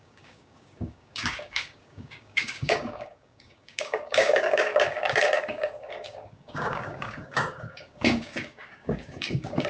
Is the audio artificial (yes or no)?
yes